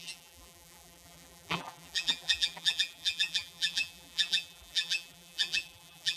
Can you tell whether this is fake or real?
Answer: fake